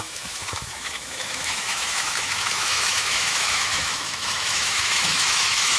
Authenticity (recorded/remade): remade